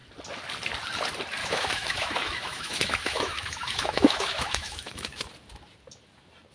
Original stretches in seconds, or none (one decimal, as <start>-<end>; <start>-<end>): 0.0-1.4; 5.3-6.5